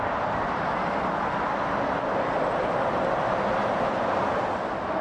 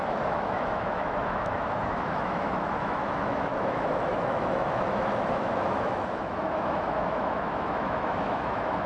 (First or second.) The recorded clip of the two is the first